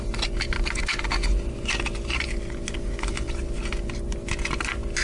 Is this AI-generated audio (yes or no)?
no